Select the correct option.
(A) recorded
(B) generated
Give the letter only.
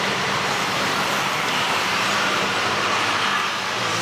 B